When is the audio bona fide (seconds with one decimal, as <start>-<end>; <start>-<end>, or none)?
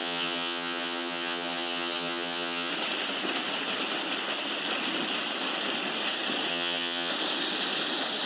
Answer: 2.7-6.5; 7.1-8.3